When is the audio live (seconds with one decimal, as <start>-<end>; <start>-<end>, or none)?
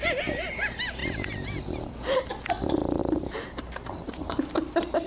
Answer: 0.0-3.0